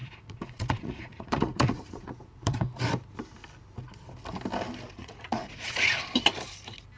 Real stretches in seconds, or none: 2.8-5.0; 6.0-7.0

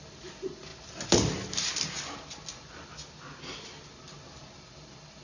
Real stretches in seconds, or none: 0.0-5.2

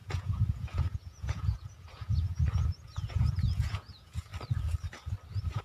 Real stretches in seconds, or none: 4.3-5.6

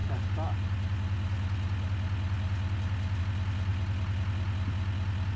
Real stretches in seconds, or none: 0.0-5.4

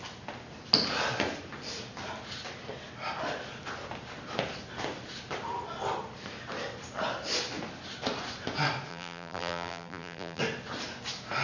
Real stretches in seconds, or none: 0.0-8.9; 10.4-11.4

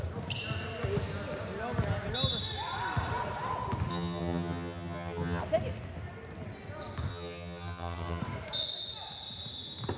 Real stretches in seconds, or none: 0.0-3.9; 5.4-7.1; 8.2-10.0

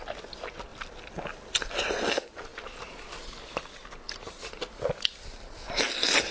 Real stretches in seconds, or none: 0.0-6.3

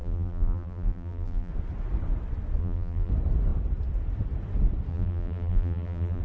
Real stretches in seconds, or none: 1.5-2.6; 3.1-4.9